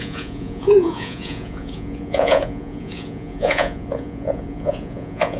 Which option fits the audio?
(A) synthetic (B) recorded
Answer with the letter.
A